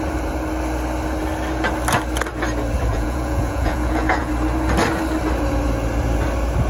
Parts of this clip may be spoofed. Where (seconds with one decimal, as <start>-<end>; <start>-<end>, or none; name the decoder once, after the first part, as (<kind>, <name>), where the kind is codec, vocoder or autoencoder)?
2.9-4.3 (vocoder, Vocos)